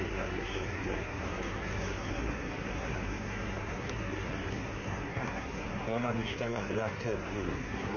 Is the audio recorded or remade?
remade